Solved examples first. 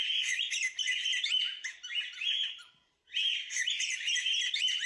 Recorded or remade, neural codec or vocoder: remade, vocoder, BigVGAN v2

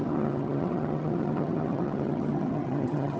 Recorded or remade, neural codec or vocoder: remade, vocoder, HiFi-GAN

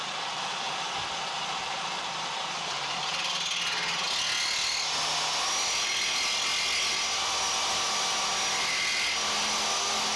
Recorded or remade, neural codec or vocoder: recorded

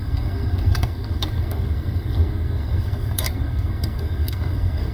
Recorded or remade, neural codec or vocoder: remade, codec, SNAC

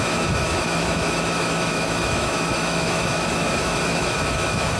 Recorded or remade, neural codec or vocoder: remade, autoencoder, DAC-VAE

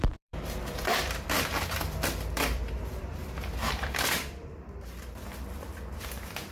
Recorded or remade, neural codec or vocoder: remade, vocoder, BigVGAN v2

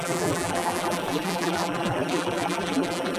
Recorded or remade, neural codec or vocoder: remade, vocoder, BigVGAN v2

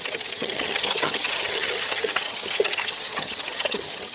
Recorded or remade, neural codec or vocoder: remade, vocoder, HiFi-GAN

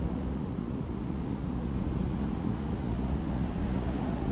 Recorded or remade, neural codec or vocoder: remade, vocoder, Vocos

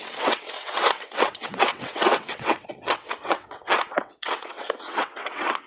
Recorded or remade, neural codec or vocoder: remade, vocoder, WaveNeXt